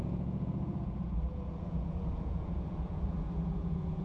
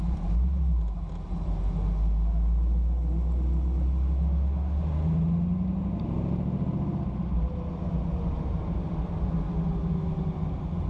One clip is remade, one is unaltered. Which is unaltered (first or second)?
second